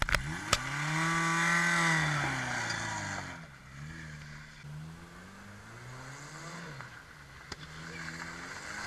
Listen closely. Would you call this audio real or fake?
real